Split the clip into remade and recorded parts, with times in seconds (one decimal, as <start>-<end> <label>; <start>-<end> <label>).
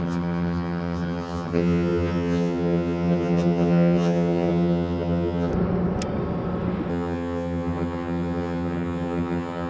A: 0.0-5.5 remade; 5.5-6.9 recorded; 6.9-9.7 remade